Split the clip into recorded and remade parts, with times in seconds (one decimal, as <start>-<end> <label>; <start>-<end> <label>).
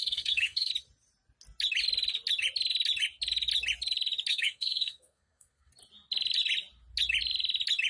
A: 0.0-0.7 remade; 0.7-4.3 recorded; 4.3-5.7 remade; 5.7-7.9 recorded